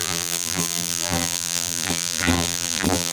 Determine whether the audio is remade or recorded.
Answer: remade